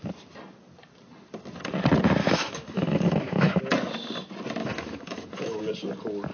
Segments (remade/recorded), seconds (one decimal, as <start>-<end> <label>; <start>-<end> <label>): 0.0-2.2 recorded; 2.2-3.6 remade; 3.6-4.6 recorded; 4.6-5.6 remade; 5.6-6.3 recorded